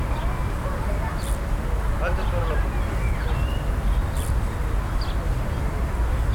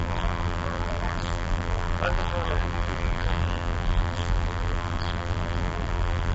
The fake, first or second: second